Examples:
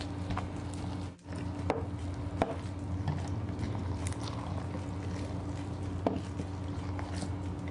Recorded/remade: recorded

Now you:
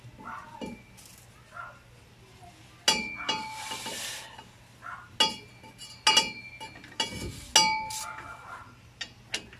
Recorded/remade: recorded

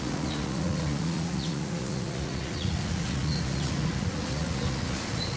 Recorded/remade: remade